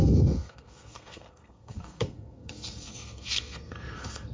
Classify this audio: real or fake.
fake